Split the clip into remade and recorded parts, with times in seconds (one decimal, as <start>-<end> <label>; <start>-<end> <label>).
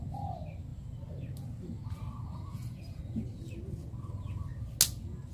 0.0-2.5 recorded; 2.5-3.0 remade; 3.0-5.3 recorded